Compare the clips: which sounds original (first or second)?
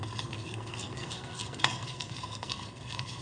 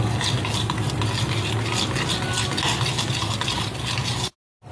second